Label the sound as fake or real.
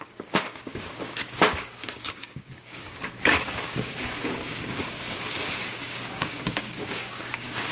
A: fake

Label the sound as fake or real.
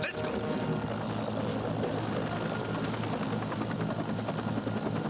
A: real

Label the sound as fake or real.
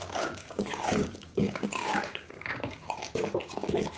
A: fake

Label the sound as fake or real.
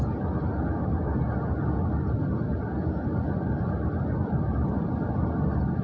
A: real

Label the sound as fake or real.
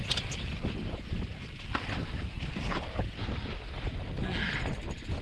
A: real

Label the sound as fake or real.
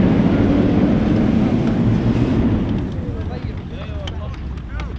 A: real